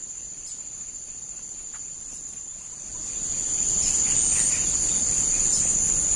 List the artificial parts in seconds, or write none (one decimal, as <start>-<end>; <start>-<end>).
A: none